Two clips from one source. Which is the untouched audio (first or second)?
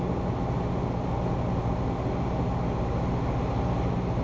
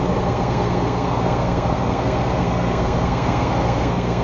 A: first